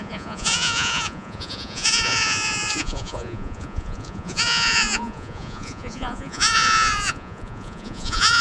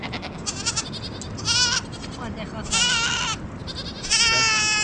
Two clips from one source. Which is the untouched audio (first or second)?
second